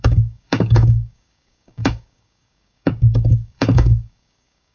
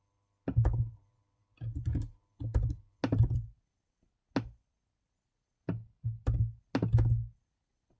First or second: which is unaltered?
second